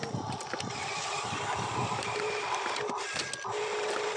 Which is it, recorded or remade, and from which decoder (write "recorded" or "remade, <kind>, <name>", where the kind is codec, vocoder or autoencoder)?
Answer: recorded